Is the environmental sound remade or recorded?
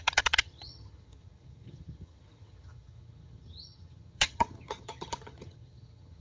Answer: remade